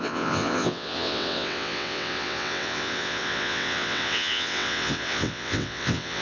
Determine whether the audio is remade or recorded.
remade